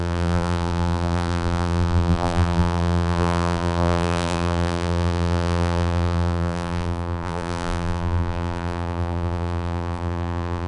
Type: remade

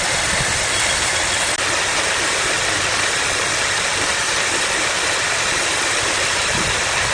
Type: recorded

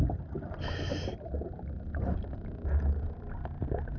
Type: recorded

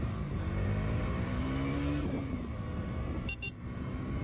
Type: remade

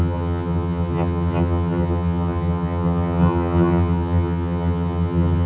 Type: remade